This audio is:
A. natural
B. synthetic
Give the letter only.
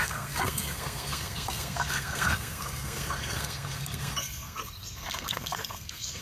B